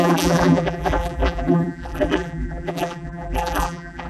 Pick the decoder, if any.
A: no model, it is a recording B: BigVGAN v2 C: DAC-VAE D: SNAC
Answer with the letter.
B